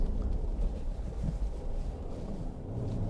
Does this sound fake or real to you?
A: fake